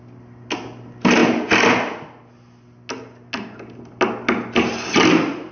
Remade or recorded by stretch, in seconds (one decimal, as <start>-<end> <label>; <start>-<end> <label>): 0.0-5.5 recorded